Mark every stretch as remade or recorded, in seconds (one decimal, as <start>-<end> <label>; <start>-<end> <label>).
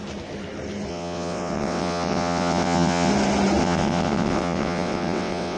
0.0-0.9 recorded; 0.9-3.1 remade; 3.1-3.6 recorded; 3.6-5.6 remade